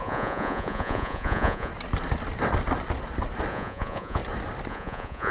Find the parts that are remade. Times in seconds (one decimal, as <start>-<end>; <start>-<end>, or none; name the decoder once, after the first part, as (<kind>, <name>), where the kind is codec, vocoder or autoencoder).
0.0-1.7 (vocoder, Vocos); 3.5-4.2; 4.7-5.3